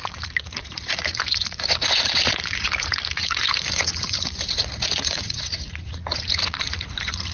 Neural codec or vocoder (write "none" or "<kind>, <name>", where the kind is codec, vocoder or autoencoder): vocoder, Vocos